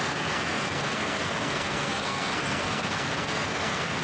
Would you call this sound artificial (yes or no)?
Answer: yes